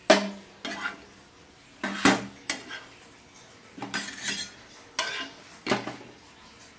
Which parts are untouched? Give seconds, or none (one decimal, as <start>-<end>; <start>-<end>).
0.0-6.8